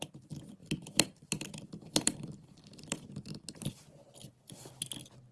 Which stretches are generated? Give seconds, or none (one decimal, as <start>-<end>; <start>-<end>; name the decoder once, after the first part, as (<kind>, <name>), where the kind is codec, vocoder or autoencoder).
0.6-3.8 (vocoder, BigVGAN v2); 4.2-4.7